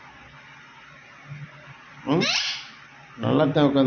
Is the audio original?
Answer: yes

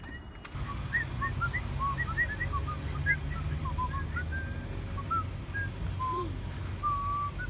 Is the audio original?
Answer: yes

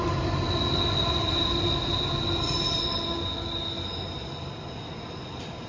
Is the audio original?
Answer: yes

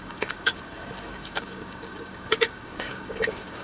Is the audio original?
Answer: no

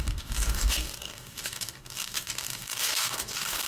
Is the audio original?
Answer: no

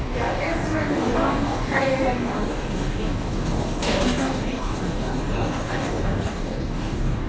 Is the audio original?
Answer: no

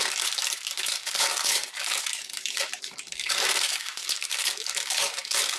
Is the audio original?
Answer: no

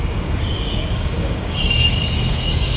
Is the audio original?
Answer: no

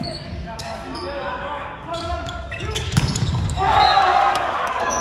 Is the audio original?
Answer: no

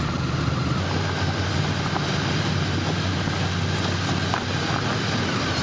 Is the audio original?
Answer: yes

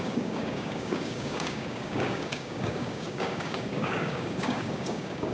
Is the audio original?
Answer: no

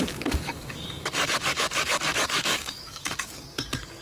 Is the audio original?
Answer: no